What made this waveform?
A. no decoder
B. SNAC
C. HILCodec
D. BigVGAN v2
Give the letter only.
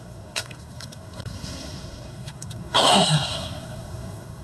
B